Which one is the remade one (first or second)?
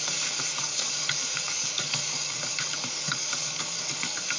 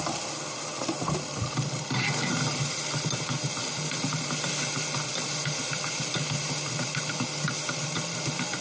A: first